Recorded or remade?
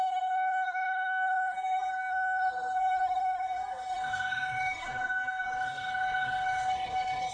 remade